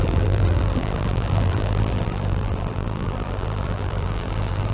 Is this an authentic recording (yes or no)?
no